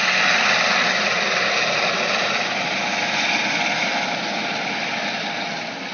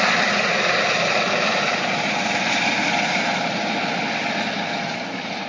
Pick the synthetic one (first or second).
second